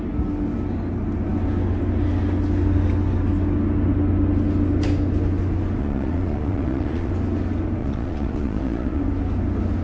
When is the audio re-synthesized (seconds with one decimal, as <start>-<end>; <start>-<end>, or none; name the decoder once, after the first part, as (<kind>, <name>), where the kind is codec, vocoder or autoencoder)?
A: 5.8-7.1 (vocoder, Vocos); 7.8-9.0